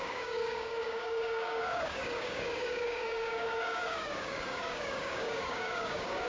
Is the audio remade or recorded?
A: remade